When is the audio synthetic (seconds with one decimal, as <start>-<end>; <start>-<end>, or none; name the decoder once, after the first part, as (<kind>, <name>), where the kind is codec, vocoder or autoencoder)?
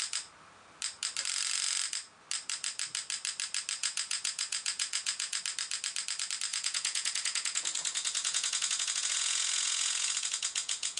3.8-5.4 (vocoder, Vocos); 6.5-11.0